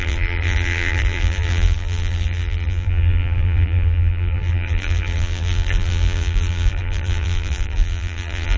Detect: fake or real fake